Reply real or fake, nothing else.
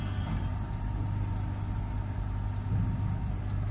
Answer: real